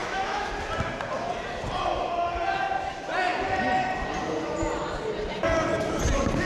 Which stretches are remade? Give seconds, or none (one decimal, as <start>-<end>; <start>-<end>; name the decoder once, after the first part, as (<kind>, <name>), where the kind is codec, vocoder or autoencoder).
0.0-0.5 (autoencoder, DAC-VAE)